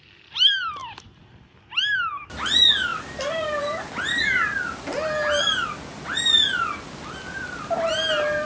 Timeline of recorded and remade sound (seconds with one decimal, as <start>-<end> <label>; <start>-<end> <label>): 0.0-8.5 recorded